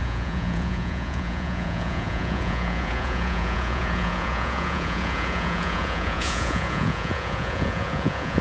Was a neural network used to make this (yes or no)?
yes